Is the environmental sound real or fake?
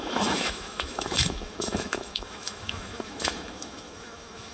fake